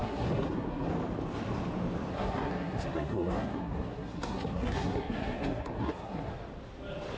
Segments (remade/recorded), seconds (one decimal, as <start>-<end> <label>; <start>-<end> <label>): 0.0-0.9 remade; 0.9-2.1 recorded; 2.1-6.3 remade; 6.3-7.2 recorded